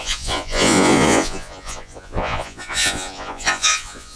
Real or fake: fake